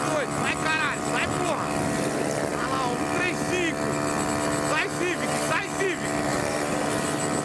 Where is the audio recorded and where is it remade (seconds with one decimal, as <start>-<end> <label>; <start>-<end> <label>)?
0.0-6.3 recorded; 6.3-6.8 remade; 6.8-7.4 recorded